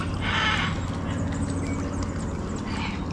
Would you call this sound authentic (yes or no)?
yes